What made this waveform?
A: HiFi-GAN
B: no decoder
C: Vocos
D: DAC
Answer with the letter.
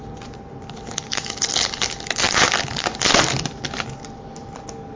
B